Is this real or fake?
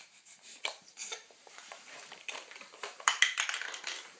fake